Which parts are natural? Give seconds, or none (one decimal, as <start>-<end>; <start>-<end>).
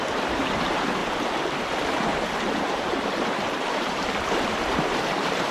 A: 1.0-2.4